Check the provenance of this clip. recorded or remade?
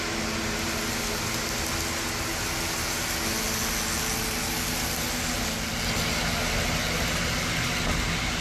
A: recorded